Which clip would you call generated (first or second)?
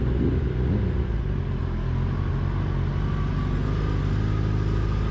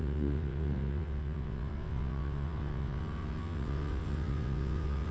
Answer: second